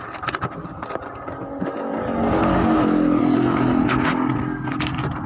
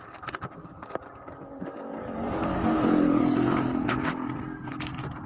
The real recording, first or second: first